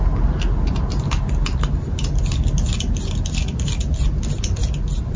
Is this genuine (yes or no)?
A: yes